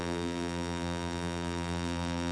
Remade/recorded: remade